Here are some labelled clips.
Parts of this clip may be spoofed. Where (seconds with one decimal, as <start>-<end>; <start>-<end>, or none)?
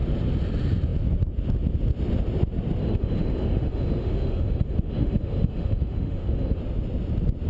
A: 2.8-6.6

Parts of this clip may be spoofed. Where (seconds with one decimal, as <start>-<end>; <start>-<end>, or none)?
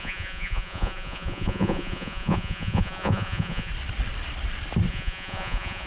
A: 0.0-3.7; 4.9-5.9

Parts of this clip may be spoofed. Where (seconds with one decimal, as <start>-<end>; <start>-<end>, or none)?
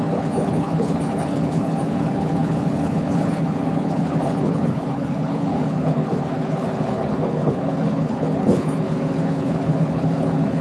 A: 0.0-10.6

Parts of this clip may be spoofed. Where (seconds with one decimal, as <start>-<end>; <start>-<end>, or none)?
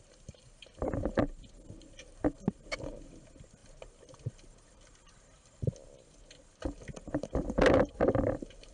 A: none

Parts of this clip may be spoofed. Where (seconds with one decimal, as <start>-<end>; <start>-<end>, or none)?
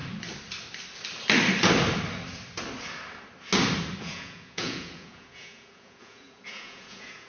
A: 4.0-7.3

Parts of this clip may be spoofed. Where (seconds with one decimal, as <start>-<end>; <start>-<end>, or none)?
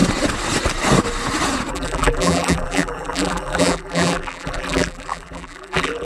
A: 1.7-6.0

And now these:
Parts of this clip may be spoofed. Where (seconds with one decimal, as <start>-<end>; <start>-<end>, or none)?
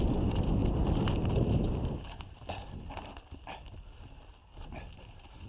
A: none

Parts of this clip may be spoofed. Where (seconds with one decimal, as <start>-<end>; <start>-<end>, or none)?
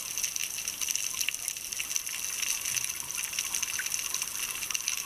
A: none